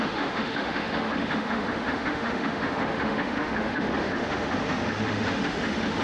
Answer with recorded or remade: remade